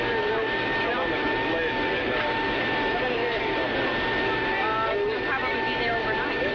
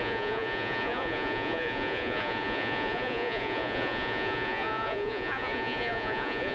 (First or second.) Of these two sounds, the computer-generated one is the second